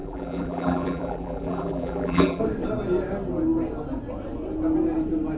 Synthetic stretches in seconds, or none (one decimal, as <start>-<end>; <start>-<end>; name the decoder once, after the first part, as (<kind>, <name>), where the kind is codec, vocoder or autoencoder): 0.0-2.4 (vocoder, BigVGAN v2)